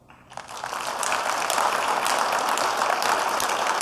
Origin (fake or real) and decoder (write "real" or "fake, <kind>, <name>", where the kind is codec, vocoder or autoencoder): real